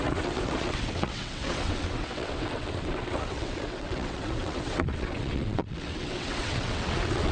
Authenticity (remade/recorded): remade